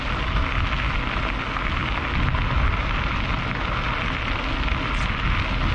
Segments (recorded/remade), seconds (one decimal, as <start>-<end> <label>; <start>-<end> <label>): 0.0-5.7 recorded